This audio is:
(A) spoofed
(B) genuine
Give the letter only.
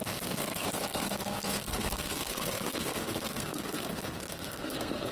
A